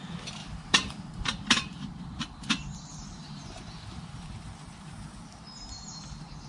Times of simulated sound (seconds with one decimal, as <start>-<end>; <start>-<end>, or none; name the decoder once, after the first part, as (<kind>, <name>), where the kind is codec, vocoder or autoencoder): 0.4-2.2 (vocoder, BigVGAN v2); 3.0-5.2